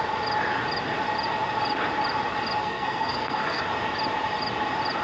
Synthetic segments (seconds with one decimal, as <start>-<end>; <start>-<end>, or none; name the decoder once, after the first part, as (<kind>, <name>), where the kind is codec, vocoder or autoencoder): 2.6-3.6 (codec, SNAC)